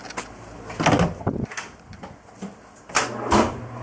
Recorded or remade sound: recorded